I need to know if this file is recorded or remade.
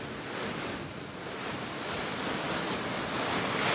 recorded